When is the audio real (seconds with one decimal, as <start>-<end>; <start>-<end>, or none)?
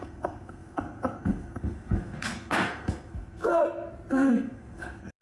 3.6-4.1